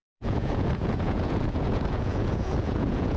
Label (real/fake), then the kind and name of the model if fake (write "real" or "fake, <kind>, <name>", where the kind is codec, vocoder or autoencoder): fake, vocoder, Vocos